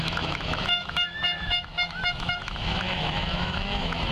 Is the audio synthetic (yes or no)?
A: yes